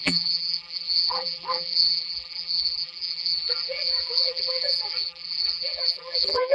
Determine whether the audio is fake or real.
fake